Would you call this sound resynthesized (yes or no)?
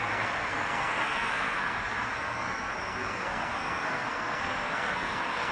yes